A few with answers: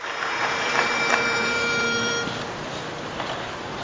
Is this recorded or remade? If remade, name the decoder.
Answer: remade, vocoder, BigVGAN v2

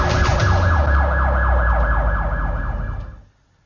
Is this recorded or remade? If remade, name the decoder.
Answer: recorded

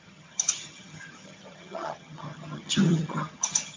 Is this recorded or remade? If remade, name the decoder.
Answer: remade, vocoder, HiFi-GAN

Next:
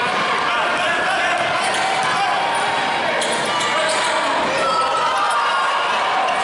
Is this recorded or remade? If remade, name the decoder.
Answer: recorded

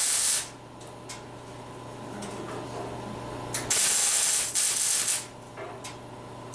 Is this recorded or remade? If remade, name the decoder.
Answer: recorded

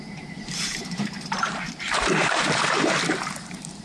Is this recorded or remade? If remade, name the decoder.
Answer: remade, vocoder, BigVGAN v2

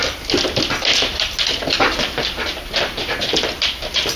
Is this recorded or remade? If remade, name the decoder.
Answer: recorded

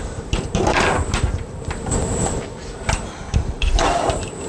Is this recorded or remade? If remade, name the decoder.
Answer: remade, vocoder, BigVGAN v2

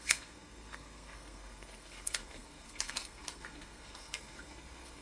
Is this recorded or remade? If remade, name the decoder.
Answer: remade, codec, SNAC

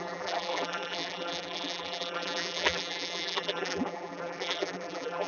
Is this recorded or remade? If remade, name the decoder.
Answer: remade, vocoder, BigVGAN v2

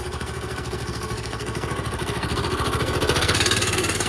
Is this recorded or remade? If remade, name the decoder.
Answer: remade, codec, SNAC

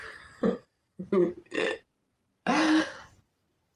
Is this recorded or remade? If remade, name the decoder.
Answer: remade, vocoder, BigVGAN v2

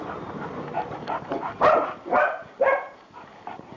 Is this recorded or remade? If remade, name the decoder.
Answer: remade, vocoder, BigVGAN v2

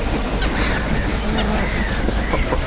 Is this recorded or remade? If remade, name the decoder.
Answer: recorded